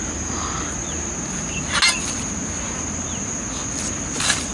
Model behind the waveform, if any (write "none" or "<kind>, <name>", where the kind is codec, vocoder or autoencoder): none